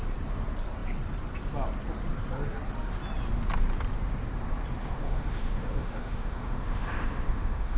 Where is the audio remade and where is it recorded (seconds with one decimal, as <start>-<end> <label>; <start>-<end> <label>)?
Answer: 0.0-4.8 recorded; 4.8-7.8 remade